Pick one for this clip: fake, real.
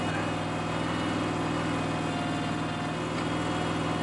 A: real